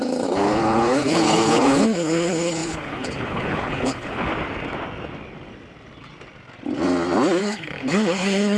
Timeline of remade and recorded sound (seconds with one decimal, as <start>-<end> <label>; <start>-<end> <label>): 0.0-4.3 remade; 4.3-7.4 recorded; 7.4-8.6 remade